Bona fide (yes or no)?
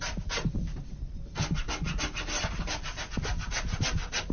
yes